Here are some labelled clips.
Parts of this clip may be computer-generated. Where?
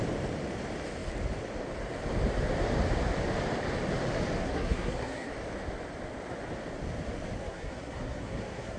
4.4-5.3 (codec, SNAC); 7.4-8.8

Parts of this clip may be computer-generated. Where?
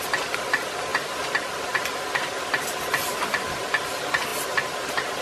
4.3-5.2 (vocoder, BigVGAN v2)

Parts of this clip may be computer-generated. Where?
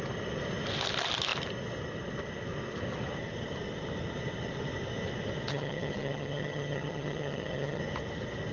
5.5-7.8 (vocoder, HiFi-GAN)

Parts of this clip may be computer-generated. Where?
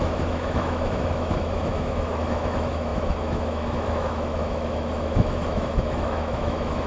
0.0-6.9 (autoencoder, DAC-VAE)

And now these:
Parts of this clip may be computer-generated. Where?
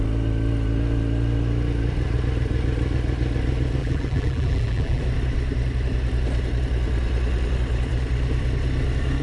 3.8-5.0 (vocoder, BigVGAN v2)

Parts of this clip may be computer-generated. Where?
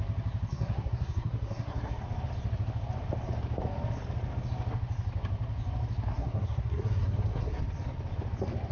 0.5-2.0 (codec, SNAC); 6.1-7.6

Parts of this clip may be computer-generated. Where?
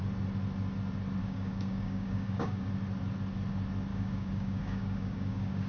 1.2-2.7 (codec, DAC); 3.9-5.7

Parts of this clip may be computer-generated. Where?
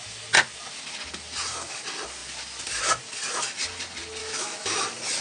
4.2-4.8 (autoencoder, DAC-VAE)